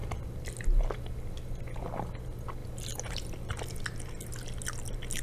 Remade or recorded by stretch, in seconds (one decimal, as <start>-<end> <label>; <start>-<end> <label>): 0.0-5.2 recorded